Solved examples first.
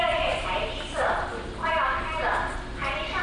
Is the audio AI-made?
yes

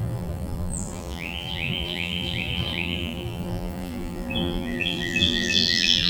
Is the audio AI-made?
yes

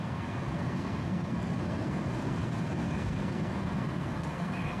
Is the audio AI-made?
yes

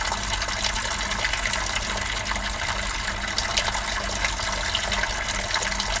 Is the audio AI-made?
no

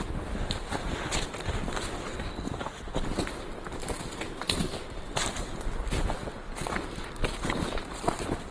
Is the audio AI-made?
no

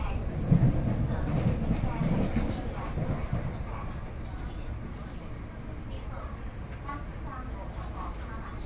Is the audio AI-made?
no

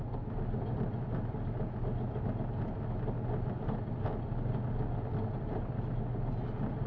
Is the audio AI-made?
no